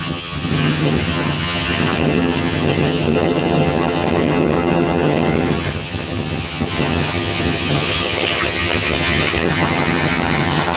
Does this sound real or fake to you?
fake